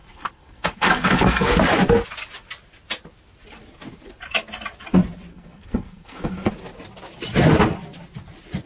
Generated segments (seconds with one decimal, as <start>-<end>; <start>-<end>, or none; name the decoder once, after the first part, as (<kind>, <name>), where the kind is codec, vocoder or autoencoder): 0.0-1.6 (codec, SNAC); 5.3-6.5